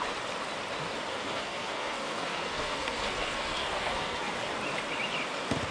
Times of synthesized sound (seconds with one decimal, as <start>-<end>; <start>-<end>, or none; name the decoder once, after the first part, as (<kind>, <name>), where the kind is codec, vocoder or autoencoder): 1.1-4.3 (codec, SNAC)